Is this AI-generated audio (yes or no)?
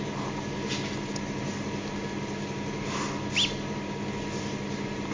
no